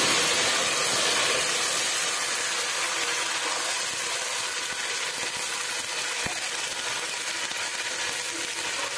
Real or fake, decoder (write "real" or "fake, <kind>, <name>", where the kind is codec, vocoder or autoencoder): real